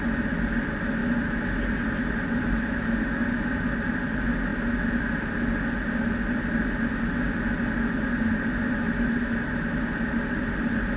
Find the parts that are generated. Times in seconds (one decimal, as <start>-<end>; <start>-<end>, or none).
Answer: none